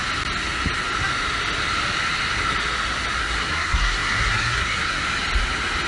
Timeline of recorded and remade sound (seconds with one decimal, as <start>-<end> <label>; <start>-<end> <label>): 0.0-3.2 recorded; 3.2-5.0 remade; 5.0-5.9 recorded